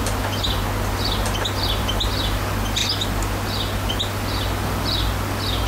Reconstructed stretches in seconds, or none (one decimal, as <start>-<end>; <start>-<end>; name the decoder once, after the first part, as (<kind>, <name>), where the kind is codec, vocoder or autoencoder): none